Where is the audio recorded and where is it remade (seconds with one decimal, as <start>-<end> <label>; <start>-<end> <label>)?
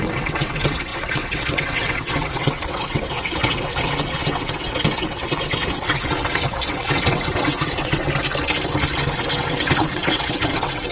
0.0-8.0 remade; 8.0-9.3 recorded; 9.3-10.9 remade